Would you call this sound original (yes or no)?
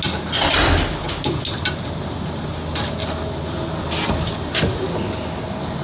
yes